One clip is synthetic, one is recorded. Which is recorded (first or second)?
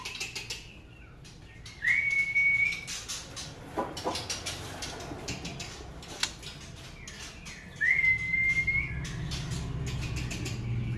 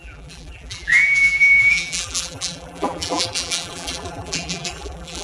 first